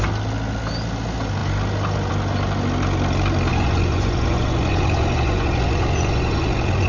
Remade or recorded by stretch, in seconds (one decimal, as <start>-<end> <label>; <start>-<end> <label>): 0.0-3.5 recorded; 3.5-6.9 remade